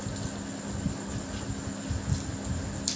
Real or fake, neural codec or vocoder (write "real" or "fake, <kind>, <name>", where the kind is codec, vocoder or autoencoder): real